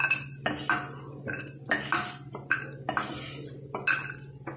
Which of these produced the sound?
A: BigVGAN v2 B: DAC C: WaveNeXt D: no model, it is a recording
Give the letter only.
D